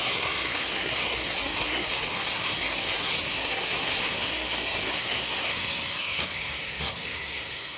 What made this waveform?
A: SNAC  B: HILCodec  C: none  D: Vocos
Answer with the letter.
A